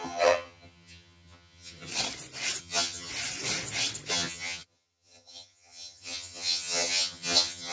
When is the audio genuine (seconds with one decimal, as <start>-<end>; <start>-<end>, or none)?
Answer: 1.9-2.6; 3.1-4.1

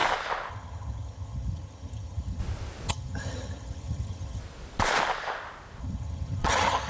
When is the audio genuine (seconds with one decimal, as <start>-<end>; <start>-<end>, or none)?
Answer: 0.0-0.5; 2.4-2.9; 4.4-5.8

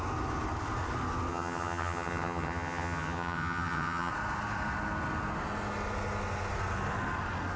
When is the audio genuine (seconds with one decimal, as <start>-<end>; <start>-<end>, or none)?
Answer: 0.0-1.3; 4.1-7.6

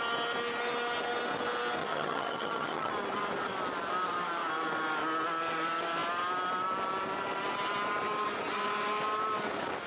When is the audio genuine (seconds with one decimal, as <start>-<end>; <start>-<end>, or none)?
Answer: 0.0-1.8; 2.9-9.9

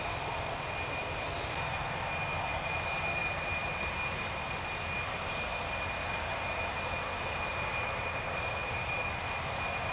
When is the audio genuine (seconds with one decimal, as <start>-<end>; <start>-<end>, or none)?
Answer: 0.0-9.9